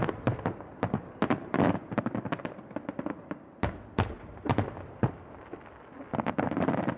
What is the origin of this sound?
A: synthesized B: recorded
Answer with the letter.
B